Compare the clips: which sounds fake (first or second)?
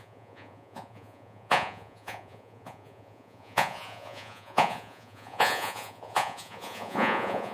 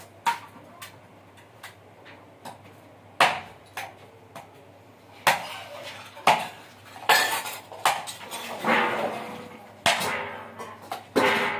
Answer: first